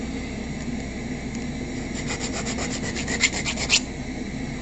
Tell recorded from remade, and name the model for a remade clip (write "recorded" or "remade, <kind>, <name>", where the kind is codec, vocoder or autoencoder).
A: recorded